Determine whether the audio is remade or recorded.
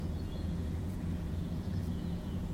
remade